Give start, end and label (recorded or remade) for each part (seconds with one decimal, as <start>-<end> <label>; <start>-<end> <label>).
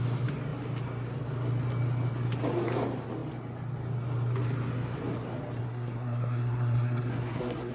0.0-5.6 recorded; 5.6-7.7 remade